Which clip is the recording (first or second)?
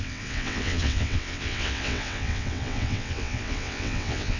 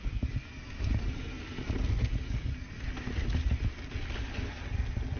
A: second